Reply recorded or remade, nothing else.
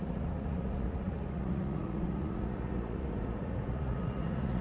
remade